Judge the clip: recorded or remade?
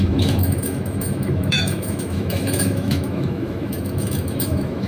remade